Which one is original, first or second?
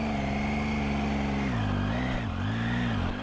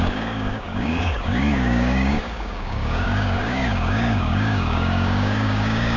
first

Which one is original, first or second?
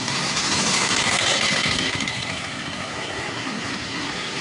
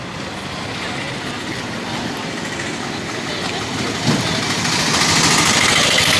second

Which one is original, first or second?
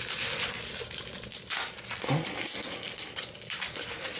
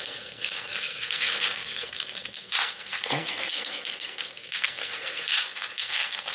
first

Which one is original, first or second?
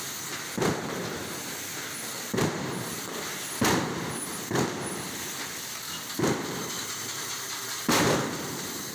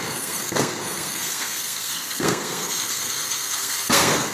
first